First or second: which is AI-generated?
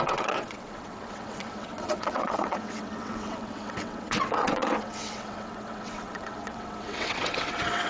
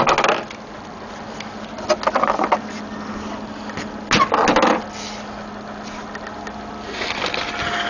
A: first